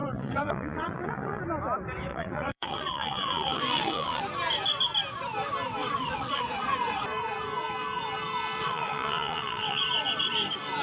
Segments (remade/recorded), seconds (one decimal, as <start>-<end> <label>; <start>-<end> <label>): 0.0-1.4 remade; 1.4-2.1 recorded; 2.1-4.2 remade; 4.2-5.8 recorded; 5.8-6.4 remade; 6.4-8.6 recorded; 8.6-9.8 remade; 9.8-10.8 recorded